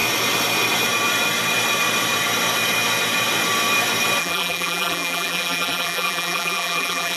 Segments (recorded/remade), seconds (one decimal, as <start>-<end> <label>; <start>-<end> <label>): 0.0-4.2 recorded; 4.2-7.2 remade